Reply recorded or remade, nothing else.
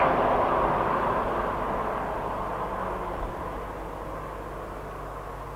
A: recorded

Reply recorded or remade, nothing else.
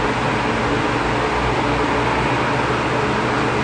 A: recorded